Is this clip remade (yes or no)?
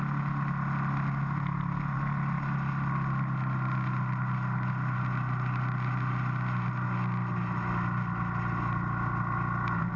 no